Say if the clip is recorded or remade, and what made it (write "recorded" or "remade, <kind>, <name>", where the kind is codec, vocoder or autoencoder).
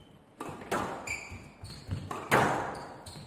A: recorded